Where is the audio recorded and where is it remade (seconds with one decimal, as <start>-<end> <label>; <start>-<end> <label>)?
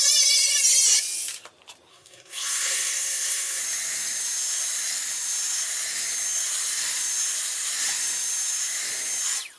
0.0-1.9 recorded; 1.9-3.6 remade; 3.6-9.6 recorded